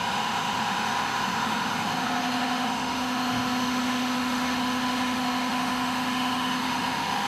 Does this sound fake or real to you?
fake